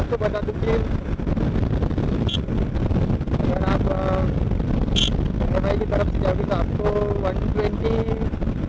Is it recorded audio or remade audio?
recorded